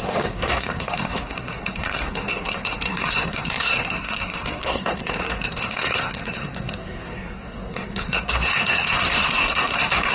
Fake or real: fake